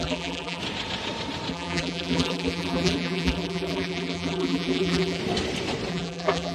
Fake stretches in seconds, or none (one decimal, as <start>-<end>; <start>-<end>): 0.0-0.6; 1.5-5.2; 5.9-6.5